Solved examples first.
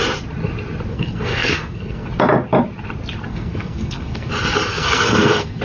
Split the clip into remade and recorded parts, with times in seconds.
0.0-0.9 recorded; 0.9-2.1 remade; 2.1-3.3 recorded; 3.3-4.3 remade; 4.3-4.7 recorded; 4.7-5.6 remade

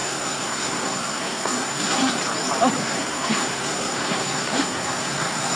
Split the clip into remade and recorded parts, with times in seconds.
0.0-2.2 remade; 2.2-2.8 recorded; 2.8-5.6 remade

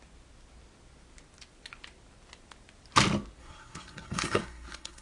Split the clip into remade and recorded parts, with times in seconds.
0.0-3.4 recorded; 3.4-5.0 remade